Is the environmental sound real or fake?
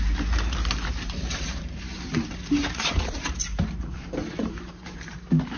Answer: fake